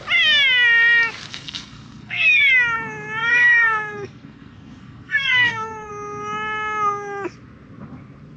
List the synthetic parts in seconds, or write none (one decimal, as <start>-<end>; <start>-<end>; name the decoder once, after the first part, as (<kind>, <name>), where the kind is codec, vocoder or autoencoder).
1.3-2.5 (codec, SNAC); 3.2-5.9